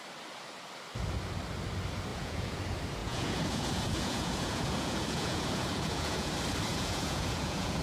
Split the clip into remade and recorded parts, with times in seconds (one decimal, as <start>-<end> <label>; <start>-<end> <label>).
0.0-2.1 recorded; 2.1-2.6 remade; 2.6-3.0 recorded; 3.0-6.3 remade; 6.3-6.7 recorded; 6.7-7.8 remade